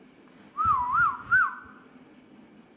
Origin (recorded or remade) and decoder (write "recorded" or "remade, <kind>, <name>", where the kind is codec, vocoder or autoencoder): recorded